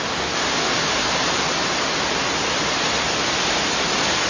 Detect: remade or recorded recorded